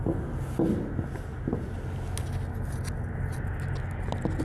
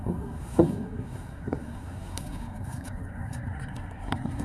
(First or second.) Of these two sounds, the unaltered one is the first